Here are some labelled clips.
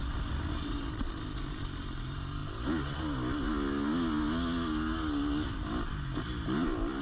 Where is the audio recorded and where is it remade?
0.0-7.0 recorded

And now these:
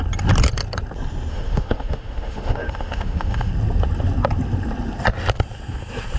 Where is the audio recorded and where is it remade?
0.0-1.3 recorded; 1.3-3.5 remade; 3.5-6.2 recorded

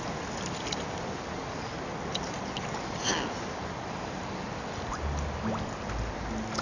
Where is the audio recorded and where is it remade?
0.0-6.6 recorded

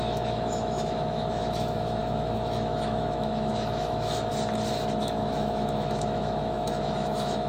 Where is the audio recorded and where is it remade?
0.0-4.3 remade; 4.3-5.0 recorded; 5.0-7.5 remade